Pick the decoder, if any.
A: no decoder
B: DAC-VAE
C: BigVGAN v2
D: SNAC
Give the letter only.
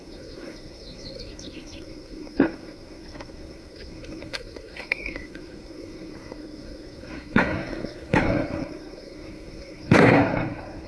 D